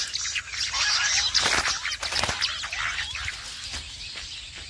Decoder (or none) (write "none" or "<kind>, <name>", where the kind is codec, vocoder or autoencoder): none